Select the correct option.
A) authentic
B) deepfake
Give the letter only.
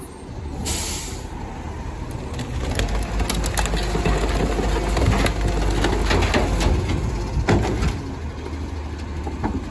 A